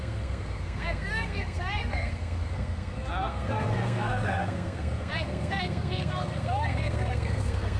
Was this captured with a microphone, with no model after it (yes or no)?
no